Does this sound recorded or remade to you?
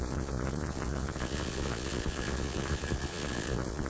remade